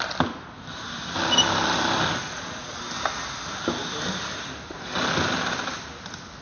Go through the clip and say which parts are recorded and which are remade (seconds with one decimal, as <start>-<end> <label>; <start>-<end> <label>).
0.0-2.2 recorded; 2.2-2.8 remade; 2.8-6.4 recorded